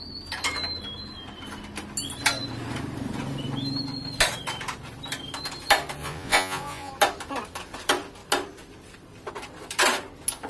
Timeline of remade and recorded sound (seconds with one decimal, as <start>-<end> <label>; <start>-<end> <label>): 0.0-6.0 recorded; 6.0-6.9 remade; 6.9-10.5 recorded